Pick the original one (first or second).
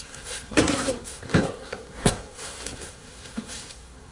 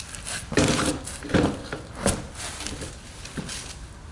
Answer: second